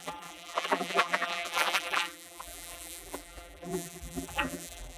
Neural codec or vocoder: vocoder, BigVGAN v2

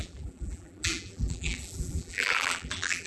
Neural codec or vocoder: vocoder, BigVGAN v2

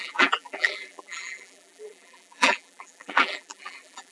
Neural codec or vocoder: vocoder, BigVGAN v2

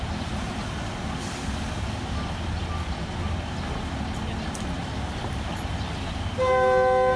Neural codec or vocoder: none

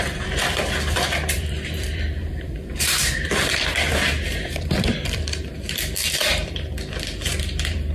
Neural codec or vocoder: vocoder, BigVGAN v2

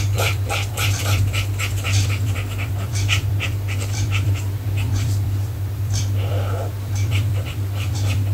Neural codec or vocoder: vocoder, BigVGAN v2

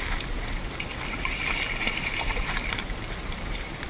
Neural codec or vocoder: vocoder, BigVGAN v2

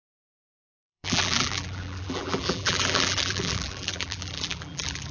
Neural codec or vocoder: vocoder, BigVGAN v2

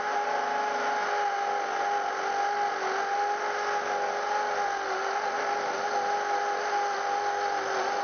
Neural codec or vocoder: none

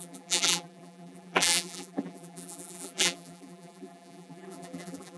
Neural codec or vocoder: vocoder, BigVGAN v2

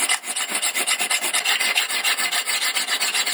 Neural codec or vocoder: none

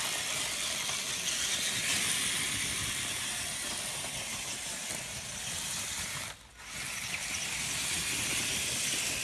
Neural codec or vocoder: vocoder, BigVGAN v2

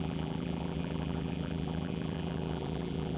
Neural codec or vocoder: vocoder, BigVGAN v2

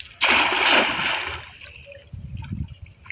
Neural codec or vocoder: none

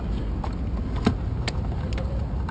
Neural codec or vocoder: none